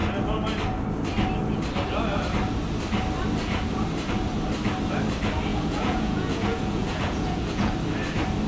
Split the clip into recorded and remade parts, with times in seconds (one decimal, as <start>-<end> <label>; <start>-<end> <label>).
0.0-5.5 recorded; 5.5-7.7 remade; 7.7-8.5 recorded